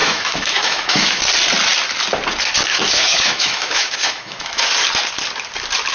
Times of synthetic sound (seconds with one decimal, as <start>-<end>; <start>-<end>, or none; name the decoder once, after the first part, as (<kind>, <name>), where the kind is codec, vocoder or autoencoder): 0.0-1.2 (autoencoder, DAC-VAE); 2.7-4.7